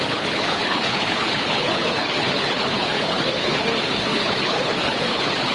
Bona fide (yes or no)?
no